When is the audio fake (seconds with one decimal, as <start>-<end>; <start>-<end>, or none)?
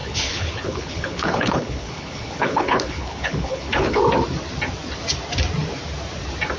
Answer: 0.0-4.0